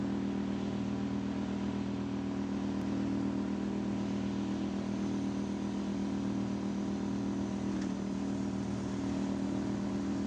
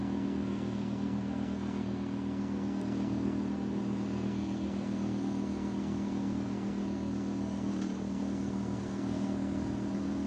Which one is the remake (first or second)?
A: second